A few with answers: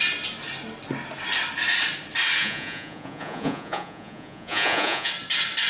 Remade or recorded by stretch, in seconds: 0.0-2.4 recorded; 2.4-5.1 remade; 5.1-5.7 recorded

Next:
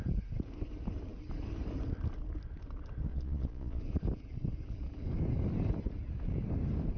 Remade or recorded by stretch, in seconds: 0.0-3.1 recorded; 3.1-3.8 remade; 3.8-7.0 recorded

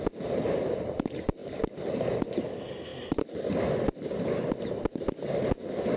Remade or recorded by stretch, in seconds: 0.0-6.0 recorded

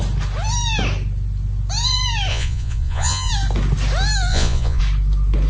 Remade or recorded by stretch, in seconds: 0.0-2.3 recorded; 2.3-3.3 remade; 3.3-4.3 recorded; 4.3-4.8 remade; 4.8-5.5 recorded

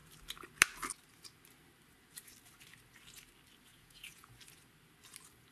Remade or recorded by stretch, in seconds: 0.0-3.7 recorded; 3.7-4.3 remade; 4.3-5.5 recorded